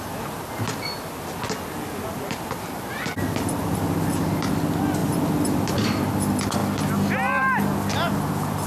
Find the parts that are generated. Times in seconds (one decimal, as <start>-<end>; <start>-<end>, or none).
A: 5.0-6.1